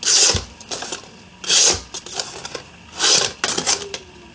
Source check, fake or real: real